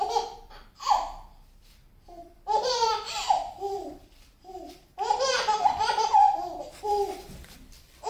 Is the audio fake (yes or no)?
yes